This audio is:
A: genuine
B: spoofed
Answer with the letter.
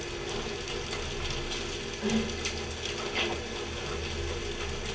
A